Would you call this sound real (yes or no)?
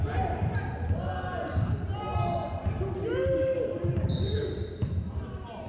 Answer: yes